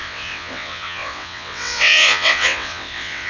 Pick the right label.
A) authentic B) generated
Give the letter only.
B